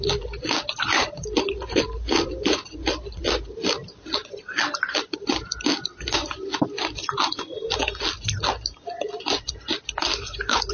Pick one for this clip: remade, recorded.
recorded